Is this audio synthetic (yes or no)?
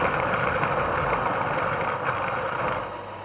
no